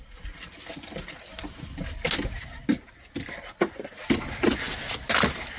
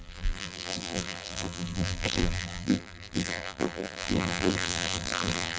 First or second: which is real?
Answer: first